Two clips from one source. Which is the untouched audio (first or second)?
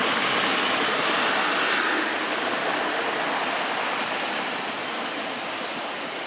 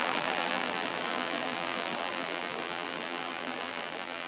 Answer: first